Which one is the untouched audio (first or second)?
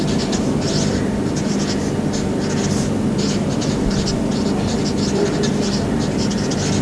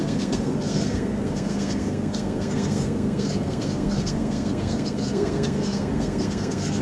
first